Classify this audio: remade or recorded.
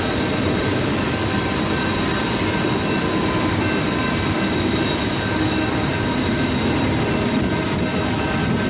recorded